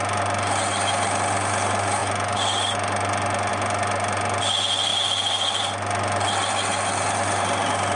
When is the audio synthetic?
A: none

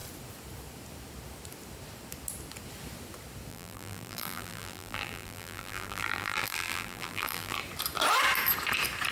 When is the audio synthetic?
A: 3.5-7.6 (vocoder, BigVGAN v2)

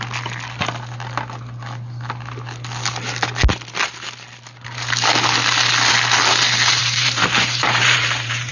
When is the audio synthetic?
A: 6.8-8.5 (vocoder, BigVGAN v2)

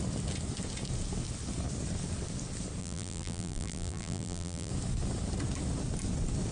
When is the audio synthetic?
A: 2.8-4.7 (vocoder, BigVGAN v2)